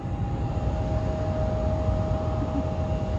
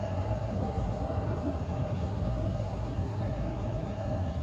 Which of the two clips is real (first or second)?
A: first